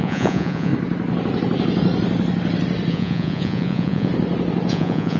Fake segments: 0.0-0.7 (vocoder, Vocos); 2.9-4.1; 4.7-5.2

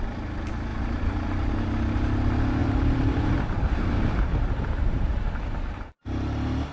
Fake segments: 0.7-1.5 (vocoder, BigVGAN v2); 2.6-6.7

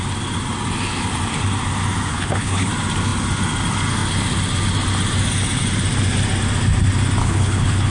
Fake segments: 2.1-2.7 (codec, HILCodec); 7.2-7.9

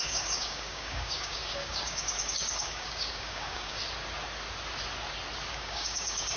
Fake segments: 0.0-3.8 (codec, DAC); 5.5-6.4

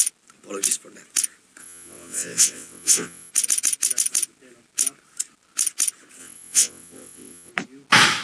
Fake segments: 1.6-3.3 (vocoder, WaveNeXt); 6.2-7.5

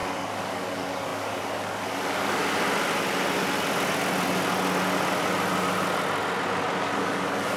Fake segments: 0.0-2.4 (codec, DAC); 7.0-7.6

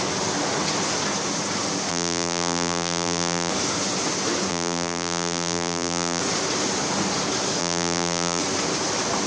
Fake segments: 1.9-3.5 (vocoder, BigVGAN v2); 4.5-6.2; 7.6-8.4